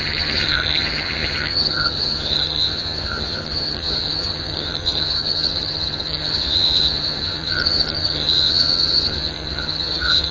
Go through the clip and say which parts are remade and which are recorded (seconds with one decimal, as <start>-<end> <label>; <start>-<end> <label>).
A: 0.0-10.3 remade